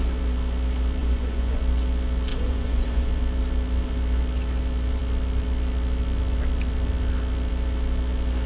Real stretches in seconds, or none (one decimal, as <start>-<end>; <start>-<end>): 0.0-1.0; 1.6-2.3; 3.1-8.5

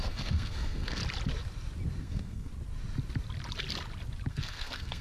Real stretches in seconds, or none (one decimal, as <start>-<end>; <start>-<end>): 1.0-2.0; 2.5-4.3